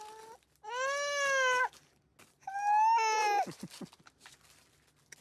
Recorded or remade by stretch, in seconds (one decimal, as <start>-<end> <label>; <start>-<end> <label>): 0.0-5.2 recorded